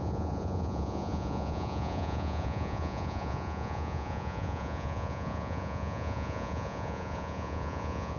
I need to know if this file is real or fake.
fake